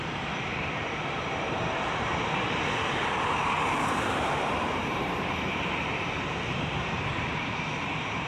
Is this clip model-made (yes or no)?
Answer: yes